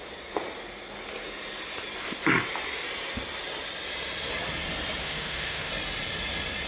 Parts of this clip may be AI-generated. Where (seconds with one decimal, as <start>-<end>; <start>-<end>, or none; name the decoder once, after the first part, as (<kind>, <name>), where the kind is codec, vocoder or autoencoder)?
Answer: 5.0-5.7 (autoencoder, DAC-VAE)